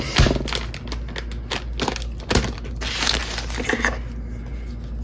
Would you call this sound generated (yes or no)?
no